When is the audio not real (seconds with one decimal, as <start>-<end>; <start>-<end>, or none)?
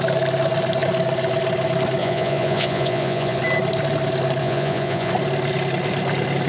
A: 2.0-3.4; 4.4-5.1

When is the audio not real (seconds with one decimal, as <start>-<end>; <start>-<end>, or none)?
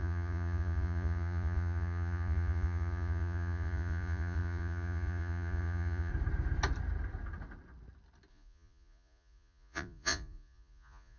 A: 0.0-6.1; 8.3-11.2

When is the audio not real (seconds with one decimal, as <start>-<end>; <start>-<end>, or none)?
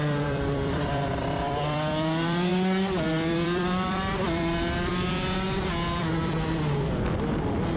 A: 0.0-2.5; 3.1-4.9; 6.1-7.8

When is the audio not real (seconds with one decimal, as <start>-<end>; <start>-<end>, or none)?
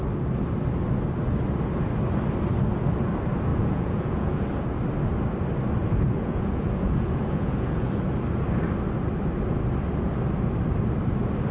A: 3.5-4.4; 5.8-8.1